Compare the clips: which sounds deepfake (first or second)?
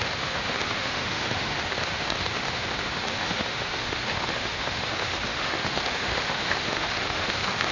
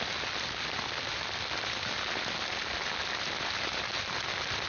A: first